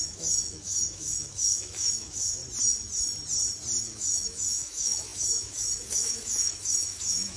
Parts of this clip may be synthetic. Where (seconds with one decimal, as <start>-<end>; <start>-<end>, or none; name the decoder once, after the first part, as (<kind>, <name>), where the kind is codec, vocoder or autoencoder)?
0.0-2.4 (autoencoder, DAC-VAE); 3.8-7.4